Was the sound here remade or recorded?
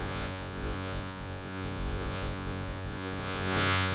remade